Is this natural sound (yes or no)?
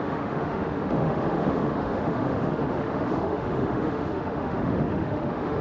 no